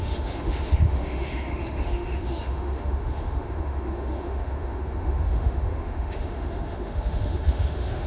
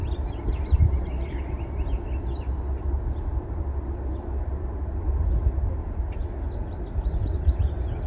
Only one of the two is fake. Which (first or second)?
first